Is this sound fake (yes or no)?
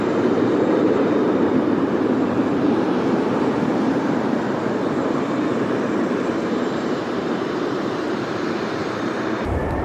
yes